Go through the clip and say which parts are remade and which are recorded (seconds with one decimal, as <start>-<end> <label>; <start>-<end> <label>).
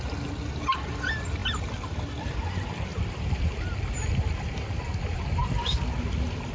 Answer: 0.0-6.5 recorded